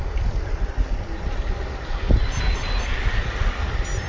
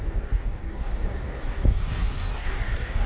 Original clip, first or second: first